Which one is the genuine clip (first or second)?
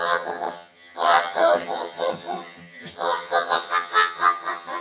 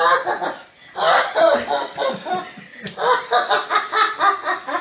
second